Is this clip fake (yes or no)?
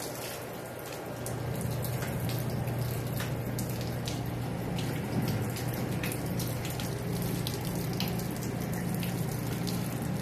no